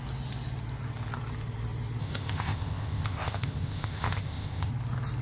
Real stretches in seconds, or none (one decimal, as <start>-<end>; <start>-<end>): 0.0-2.0; 4.7-5.2